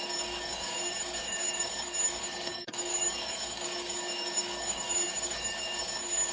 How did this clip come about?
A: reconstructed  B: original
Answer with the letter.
A